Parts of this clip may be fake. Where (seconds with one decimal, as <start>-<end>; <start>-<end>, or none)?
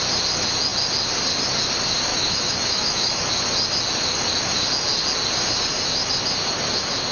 2.1-3.3